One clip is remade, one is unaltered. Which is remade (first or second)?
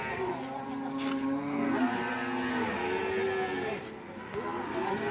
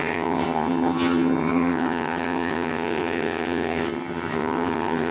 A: second